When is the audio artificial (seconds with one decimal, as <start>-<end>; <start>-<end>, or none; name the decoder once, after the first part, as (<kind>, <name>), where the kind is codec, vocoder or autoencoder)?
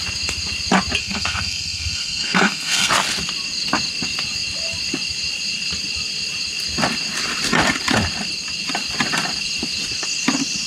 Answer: 1.0-2.9 (codec, SNAC)